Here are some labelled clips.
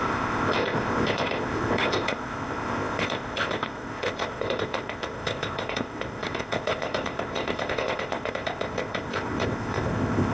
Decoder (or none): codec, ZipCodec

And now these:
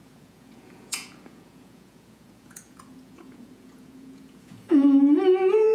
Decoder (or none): vocoder, Vocos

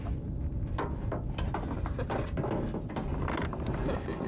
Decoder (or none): none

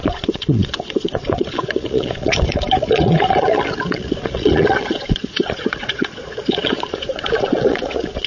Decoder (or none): vocoder, Vocos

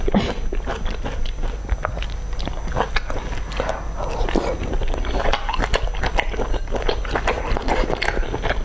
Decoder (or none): none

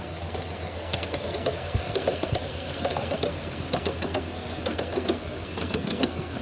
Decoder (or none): codec, SNAC